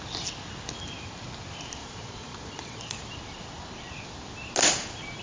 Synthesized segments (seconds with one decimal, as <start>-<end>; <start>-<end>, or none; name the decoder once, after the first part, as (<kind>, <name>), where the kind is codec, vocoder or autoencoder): 1.8-3.0 (vocoder, Vocos)